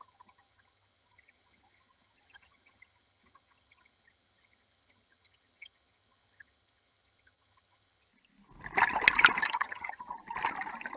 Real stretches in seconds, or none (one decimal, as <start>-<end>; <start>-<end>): 8.1-9.4; 10.1-11.0